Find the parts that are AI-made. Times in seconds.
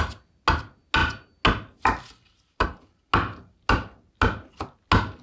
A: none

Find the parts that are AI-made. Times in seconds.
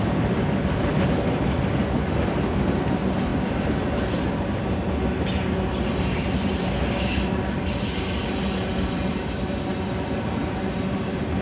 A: none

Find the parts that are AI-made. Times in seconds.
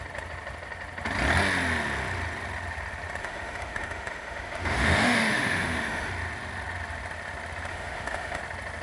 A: 3.2-6.1 (autoencoder, DAC-VAE); 7.7-8.4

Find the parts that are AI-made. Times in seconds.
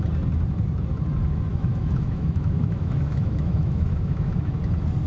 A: 1.5-4.6 (autoencoder, DAC-VAE)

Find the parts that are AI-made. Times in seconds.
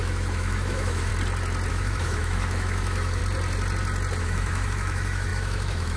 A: 0.0-1.1 (autoencoder, DAC-VAE); 1.7-3.2; 4.2-6.0